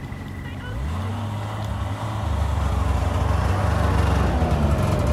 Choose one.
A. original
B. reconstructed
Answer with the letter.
A